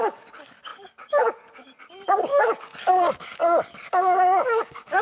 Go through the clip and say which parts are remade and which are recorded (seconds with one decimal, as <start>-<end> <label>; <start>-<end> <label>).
0.0-5.0 remade